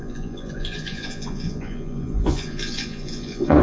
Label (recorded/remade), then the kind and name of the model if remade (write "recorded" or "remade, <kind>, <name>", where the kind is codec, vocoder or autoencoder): remade, vocoder, Vocos